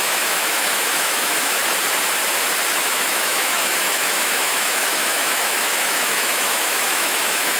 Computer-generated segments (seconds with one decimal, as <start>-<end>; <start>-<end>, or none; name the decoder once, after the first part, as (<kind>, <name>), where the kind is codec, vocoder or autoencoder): 0.0-1.6 (autoencoder, DAC-VAE); 2.9-7.6